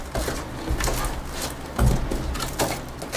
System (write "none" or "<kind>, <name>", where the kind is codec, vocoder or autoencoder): none